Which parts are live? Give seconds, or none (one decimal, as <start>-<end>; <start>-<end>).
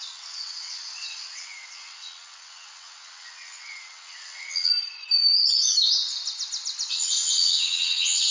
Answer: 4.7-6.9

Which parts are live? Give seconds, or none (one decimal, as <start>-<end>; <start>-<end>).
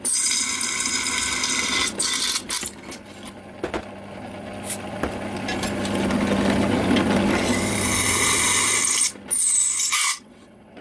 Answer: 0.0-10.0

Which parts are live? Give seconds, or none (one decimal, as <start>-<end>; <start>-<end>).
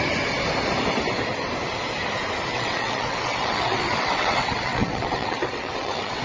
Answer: 0.0-2.5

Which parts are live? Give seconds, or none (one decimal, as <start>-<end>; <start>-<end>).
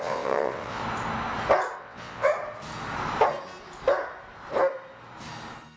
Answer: 0.8-1.8; 2.3-5.8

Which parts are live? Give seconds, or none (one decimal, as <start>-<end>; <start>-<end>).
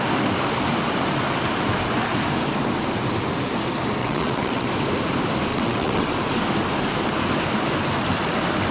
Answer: 0.0-4.0; 4.7-5.5; 6.1-8.7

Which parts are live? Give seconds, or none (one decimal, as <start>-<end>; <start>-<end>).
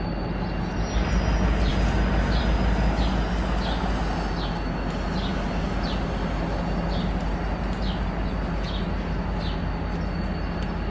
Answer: 0.0-10.9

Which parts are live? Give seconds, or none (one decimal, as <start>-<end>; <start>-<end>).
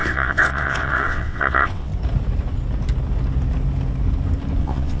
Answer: 1.9-4.6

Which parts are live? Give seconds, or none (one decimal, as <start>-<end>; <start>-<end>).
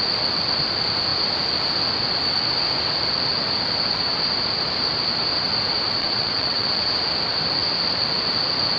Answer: 0.0-6.0; 6.9-8.8